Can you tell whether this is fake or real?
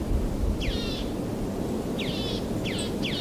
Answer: real